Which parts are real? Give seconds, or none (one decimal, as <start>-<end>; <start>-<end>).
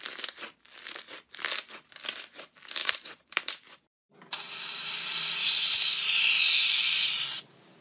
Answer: 0.0-2.8; 6.3-7.8